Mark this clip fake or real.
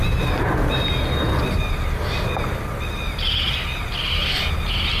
real